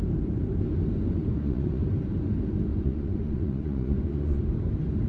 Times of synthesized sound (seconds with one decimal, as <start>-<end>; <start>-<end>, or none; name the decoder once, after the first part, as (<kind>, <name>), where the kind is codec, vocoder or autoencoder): 1.2-1.8 (vocoder, Vocos); 2.7-4.4